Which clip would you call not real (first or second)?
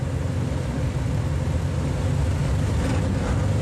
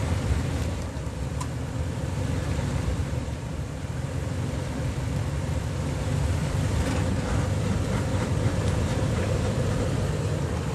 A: second